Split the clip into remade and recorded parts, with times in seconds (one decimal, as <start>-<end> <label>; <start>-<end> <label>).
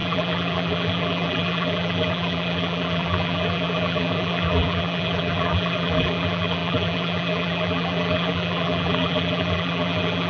0.0-10.3 remade